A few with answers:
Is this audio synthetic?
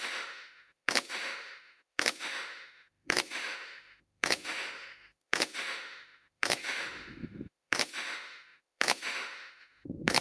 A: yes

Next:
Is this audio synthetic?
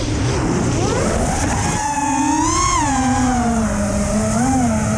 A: no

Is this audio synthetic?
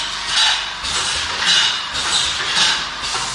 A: no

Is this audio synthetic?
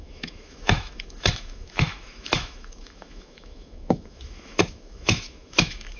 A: yes